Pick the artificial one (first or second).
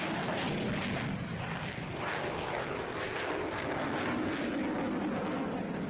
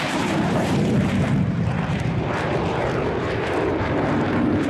second